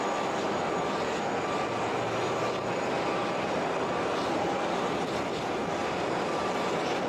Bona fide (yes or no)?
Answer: yes